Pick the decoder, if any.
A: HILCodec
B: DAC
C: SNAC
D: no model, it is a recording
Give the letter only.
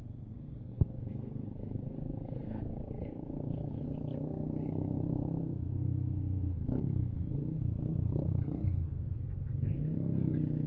C